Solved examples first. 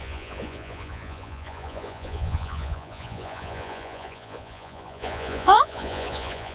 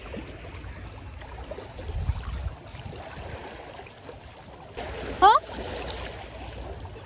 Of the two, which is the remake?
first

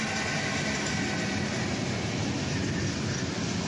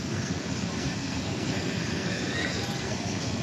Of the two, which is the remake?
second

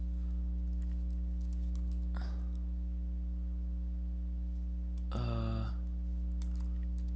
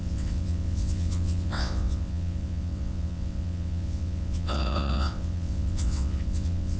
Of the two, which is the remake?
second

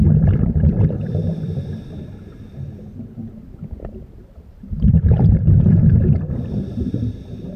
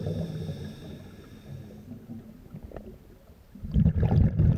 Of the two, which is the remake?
first